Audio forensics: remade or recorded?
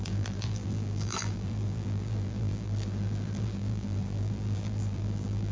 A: remade